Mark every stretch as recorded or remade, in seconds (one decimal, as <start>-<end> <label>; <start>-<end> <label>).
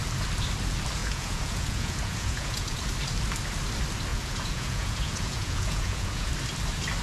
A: 0.0-1.0 recorded; 1.0-2.8 remade; 2.8-4.1 recorded; 4.1-6.3 remade; 6.3-7.0 recorded